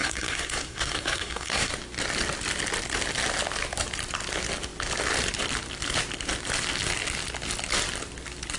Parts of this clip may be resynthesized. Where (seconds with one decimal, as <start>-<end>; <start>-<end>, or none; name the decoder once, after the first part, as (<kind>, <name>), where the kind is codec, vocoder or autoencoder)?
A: 0.0-1.7 (codec, SNAC)